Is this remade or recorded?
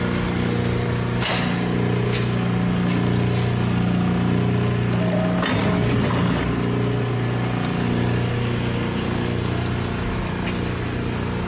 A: recorded